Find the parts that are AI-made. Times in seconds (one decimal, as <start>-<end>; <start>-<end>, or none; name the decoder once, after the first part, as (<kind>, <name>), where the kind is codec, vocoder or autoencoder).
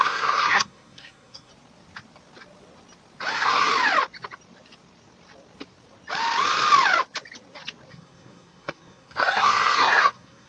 0.0-1.5 (codec, SNAC); 3.3-3.7; 7.9-10.5